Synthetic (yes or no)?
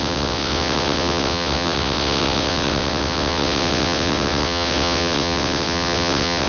yes